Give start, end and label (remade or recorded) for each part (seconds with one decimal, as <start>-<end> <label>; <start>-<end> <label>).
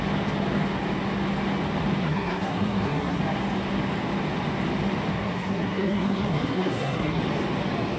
0.0-2.0 recorded; 2.0-3.2 remade; 3.2-5.1 recorded; 5.1-7.2 remade; 7.2-8.0 recorded